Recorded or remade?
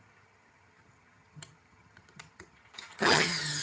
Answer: remade